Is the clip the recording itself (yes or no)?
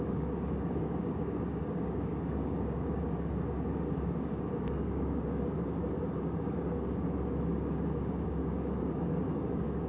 no